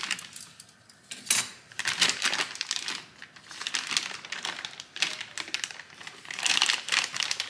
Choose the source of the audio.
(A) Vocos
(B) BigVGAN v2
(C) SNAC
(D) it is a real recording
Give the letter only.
D